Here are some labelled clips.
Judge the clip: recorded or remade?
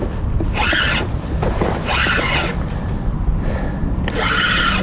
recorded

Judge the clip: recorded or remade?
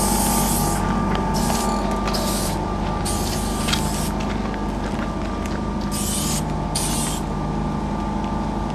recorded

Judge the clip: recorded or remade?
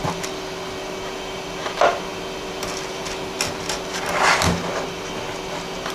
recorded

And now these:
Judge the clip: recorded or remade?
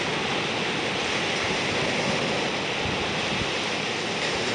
recorded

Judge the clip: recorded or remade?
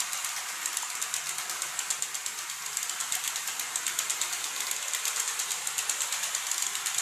recorded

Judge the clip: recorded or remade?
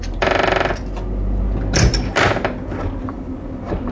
recorded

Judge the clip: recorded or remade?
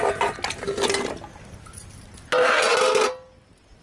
recorded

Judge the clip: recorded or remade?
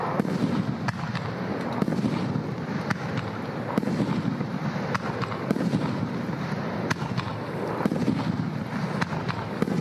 recorded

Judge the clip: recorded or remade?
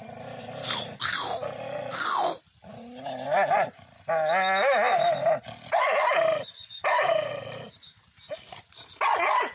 recorded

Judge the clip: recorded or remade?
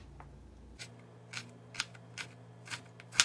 recorded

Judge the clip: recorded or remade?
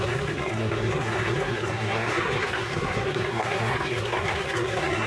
remade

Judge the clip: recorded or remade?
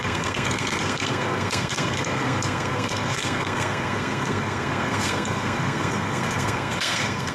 remade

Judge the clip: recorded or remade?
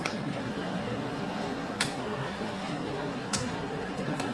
remade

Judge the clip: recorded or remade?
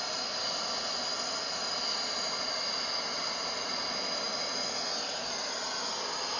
recorded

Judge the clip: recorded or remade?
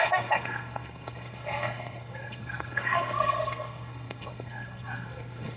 remade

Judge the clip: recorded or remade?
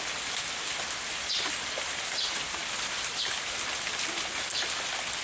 recorded